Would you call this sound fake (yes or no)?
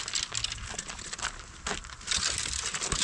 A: no